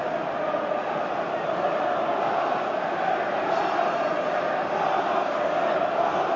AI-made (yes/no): no